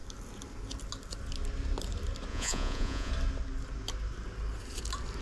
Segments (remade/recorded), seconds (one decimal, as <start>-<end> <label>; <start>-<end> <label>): 0.0-2.3 recorded; 2.3-3.1 remade; 3.1-5.2 recorded